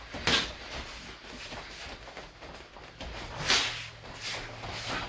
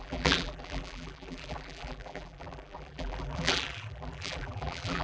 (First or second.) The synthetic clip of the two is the second